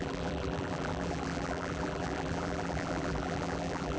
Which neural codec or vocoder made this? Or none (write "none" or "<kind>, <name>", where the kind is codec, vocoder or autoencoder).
vocoder, BigVGAN v2